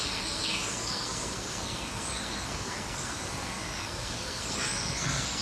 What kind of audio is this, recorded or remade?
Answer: remade